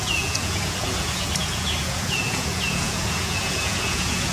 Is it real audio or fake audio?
fake